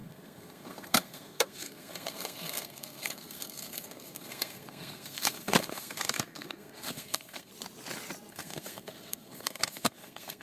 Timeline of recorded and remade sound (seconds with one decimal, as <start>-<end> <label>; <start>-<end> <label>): 0.0-7.5 remade; 7.5-8.3 recorded; 8.3-10.4 remade